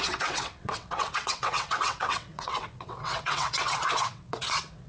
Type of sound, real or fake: fake